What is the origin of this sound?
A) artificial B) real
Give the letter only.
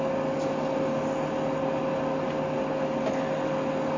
B